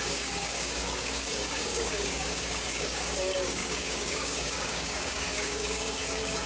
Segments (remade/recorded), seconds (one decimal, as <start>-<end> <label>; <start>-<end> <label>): 0.0-6.5 remade